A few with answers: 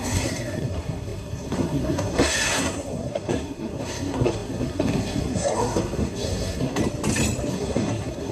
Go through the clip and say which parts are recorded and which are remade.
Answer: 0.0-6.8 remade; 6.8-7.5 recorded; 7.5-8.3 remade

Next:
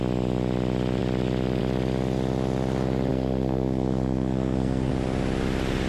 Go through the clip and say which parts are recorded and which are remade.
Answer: 0.0-3.1 recorded; 3.1-4.9 remade; 4.9-5.9 recorded

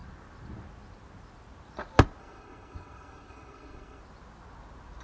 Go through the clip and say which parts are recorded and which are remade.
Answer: 0.0-2.2 recorded; 2.2-4.0 remade; 4.0-5.0 recorded

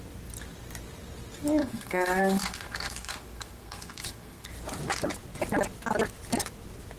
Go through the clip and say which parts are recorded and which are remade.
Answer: 0.0-1.6 recorded; 1.6-4.5 remade; 4.5-7.0 recorded

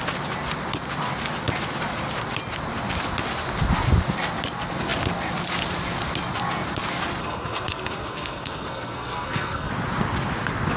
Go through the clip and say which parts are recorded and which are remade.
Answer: 0.0-7.2 recorded; 7.2-9.7 remade; 9.7-10.8 recorded

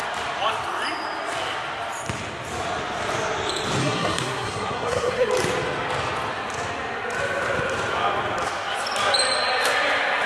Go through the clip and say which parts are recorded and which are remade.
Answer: 0.0-3.8 recorded; 3.8-5.3 remade; 5.3-10.3 recorded

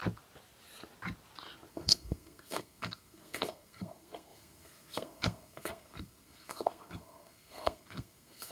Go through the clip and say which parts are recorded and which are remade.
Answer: 0.0-1.7 recorded; 1.7-8.5 remade